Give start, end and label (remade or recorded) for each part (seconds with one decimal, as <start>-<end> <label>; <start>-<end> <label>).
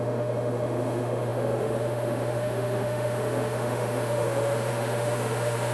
0.0-5.7 remade